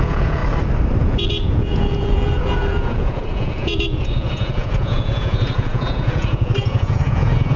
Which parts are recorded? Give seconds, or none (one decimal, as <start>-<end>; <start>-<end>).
0.4-1.0